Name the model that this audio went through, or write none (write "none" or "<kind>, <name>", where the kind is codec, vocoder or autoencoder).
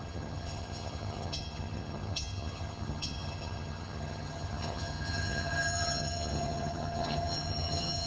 vocoder, HiFi-GAN